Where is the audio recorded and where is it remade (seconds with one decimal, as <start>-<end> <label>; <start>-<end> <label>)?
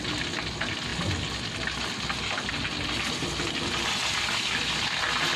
0.0-5.4 recorded